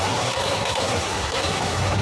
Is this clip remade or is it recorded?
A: remade